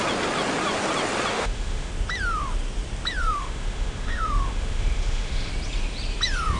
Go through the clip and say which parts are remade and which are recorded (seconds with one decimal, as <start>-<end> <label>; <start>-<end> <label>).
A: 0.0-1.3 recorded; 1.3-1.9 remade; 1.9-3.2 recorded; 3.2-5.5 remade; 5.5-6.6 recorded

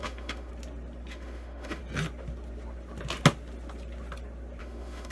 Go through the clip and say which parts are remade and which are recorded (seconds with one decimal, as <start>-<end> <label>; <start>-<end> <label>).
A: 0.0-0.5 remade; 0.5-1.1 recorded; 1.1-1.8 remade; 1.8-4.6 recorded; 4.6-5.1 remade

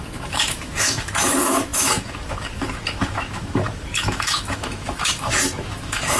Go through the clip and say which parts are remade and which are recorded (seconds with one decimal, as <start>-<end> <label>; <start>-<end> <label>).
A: 0.0-6.2 remade